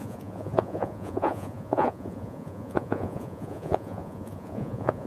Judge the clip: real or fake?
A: fake